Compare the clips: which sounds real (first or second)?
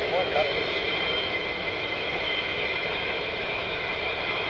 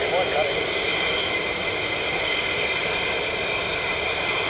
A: second